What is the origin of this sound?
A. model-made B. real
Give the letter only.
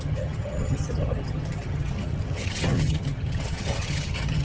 A